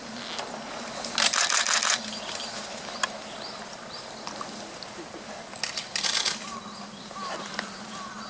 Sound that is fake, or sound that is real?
real